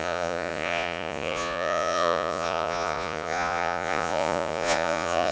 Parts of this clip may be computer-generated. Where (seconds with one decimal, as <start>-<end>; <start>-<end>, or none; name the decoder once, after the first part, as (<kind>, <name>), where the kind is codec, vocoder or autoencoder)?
0.0-5.3 (vocoder, Vocos)